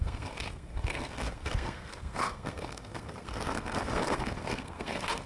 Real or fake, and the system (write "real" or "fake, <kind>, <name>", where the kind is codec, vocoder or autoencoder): fake, codec, SNAC